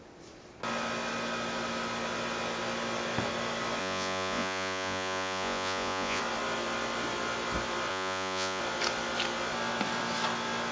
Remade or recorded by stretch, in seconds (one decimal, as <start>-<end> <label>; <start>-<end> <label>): 0.0-3.8 recorded; 3.8-6.2 remade; 6.2-7.9 recorded; 7.9-8.6 remade; 8.6-10.7 recorded